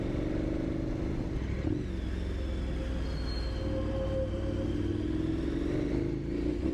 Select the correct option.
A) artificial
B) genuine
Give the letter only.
B